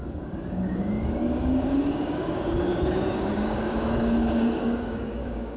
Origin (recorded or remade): remade